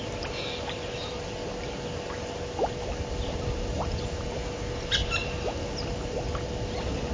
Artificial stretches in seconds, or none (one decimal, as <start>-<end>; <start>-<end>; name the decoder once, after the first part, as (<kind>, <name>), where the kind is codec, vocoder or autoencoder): none